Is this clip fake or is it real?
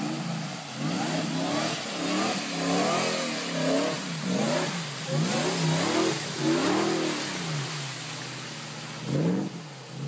real